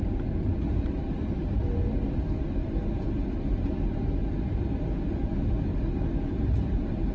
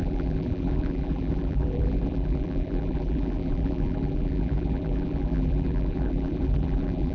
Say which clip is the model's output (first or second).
second